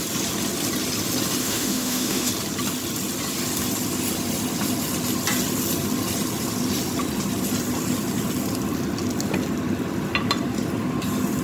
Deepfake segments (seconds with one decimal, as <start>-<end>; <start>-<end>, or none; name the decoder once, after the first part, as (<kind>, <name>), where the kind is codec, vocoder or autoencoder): 1.4-2.3 (autoencoder, DAC-VAE)